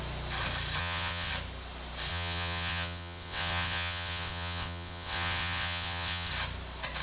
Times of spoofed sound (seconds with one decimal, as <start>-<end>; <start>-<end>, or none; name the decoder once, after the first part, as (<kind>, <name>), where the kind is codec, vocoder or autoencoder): 0.8-1.3 (vocoder, WaveNeXt); 2.1-6.3